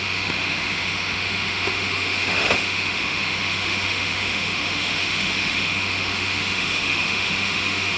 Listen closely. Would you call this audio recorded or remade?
remade